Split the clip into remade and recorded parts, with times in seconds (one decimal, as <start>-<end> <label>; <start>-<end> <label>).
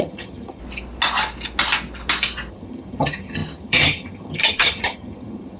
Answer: 0.0-0.6 remade; 0.6-2.5 recorded; 2.5-5.6 remade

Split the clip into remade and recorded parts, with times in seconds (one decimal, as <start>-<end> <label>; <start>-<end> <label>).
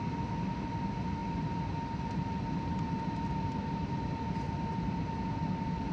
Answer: 0.0-5.9 recorded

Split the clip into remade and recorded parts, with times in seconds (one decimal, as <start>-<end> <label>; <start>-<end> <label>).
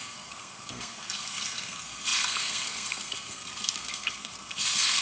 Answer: 0.0-5.0 remade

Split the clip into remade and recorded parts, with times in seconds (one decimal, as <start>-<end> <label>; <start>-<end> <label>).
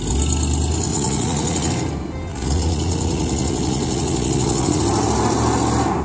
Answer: 0.0-0.9 recorded; 0.9-1.7 remade; 1.7-2.3 recorded; 2.3-4.8 remade; 4.8-6.0 recorded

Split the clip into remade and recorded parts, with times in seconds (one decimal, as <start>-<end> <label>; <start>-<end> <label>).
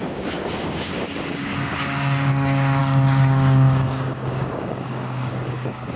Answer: 0.0-6.0 remade